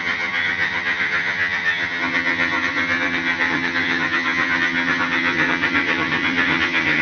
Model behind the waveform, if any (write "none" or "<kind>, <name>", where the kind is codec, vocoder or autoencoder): vocoder, HiFi-GAN